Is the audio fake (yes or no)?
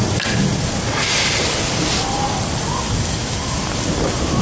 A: no